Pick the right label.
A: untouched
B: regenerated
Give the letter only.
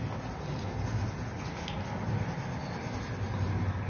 A